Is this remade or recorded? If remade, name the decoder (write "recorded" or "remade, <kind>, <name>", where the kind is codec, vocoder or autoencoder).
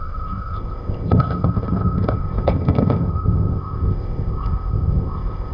remade, codec, ZipCodec